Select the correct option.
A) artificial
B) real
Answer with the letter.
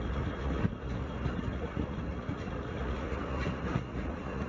A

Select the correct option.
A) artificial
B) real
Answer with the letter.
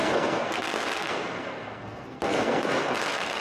A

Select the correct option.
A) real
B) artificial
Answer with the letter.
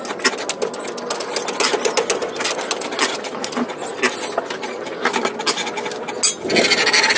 A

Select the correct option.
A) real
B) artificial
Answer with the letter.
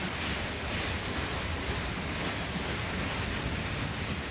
A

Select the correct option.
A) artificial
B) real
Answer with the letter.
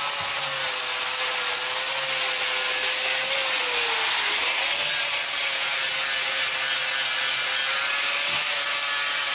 B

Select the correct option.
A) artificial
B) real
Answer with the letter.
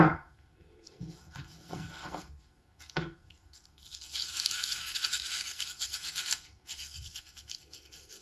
A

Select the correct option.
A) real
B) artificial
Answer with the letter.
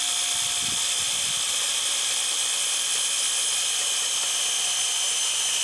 A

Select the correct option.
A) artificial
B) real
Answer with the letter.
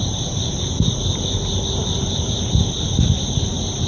A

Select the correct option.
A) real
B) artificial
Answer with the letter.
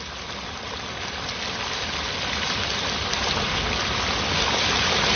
A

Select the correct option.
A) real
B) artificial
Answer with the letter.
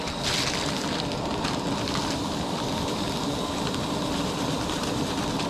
A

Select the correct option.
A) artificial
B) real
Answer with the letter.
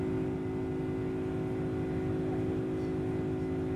B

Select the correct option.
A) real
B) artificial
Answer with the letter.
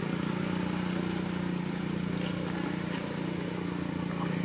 A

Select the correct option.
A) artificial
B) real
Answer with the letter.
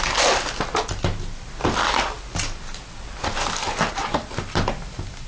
B